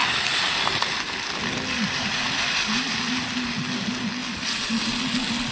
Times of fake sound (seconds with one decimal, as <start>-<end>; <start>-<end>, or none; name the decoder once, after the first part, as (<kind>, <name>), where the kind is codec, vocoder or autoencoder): none